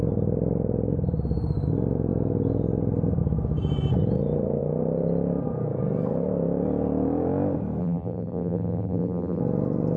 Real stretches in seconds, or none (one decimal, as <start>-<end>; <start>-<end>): 0.0-7.8; 9.4-10.0